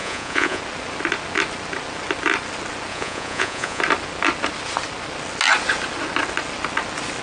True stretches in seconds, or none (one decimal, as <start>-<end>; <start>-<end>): 0.6-2.9; 3.8-7.2